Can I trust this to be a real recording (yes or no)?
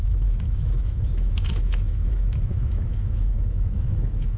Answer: no